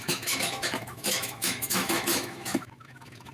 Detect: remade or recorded remade